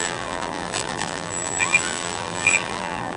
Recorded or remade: remade